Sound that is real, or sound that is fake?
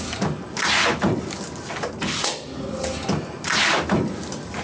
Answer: real